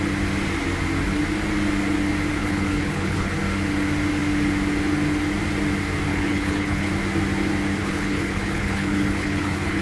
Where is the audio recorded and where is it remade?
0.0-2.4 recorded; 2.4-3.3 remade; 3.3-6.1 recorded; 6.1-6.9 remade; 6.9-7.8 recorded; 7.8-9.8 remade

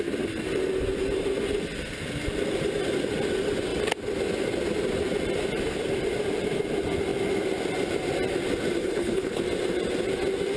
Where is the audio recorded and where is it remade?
0.0-8.8 recorded; 8.8-9.4 remade; 9.4-10.6 recorded

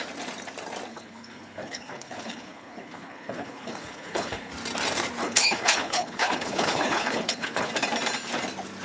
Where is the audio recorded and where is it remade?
0.0-0.9 recorded; 0.9-4.5 remade; 4.5-5.2 recorded; 5.2-7.7 remade; 7.7-8.8 recorded

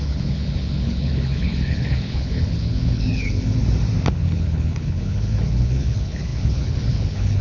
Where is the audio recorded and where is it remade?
0.0-3.6 remade; 3.6-4.1 recorded; 4.1-7.4 remade